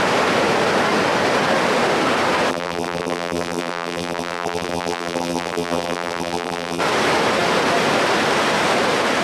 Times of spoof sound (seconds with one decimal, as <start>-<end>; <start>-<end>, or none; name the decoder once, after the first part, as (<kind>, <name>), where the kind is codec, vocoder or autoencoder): 2.5-6.8 (vocoder, BigVGAN v2)